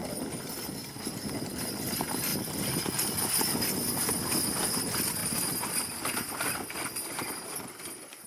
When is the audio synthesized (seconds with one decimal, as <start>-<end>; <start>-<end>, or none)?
none